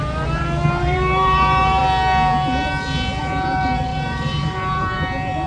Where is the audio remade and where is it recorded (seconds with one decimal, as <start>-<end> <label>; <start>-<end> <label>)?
0.0-1.8 remade; 1.8-3.2 recorded; 3.2-5.5 remade